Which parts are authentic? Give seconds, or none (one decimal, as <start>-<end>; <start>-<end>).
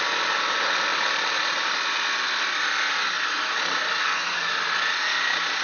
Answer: 0.0-4.0; 4.5-5.6